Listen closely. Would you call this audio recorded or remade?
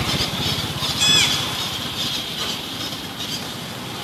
recorded